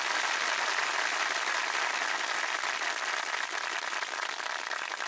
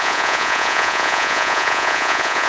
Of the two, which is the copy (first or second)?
second